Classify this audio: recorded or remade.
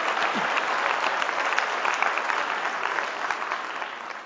recorded